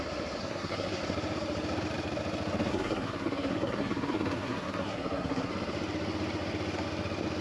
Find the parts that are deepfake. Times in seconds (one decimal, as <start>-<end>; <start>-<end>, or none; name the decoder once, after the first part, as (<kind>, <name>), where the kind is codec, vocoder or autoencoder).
0.4-1.0 (codec, SNAC); 2.7-5.5